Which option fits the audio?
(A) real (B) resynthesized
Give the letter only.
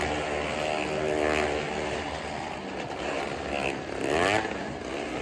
A